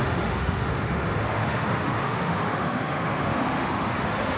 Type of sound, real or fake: fake